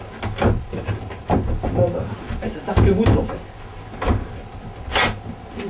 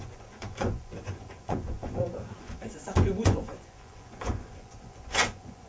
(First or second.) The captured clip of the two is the first